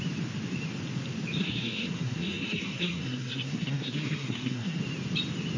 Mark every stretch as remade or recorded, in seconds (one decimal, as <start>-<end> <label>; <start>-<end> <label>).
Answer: 0.0-1.4 recorded; 1.4-4.8 remade; 4.8-5.6 recorded